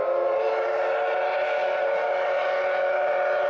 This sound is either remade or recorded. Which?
recorded